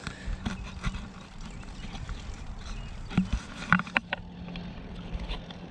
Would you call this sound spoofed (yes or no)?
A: no